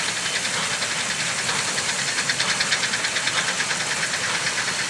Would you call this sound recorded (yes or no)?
yes